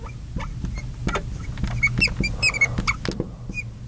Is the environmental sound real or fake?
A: real